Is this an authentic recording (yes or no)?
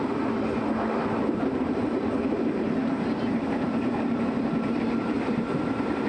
no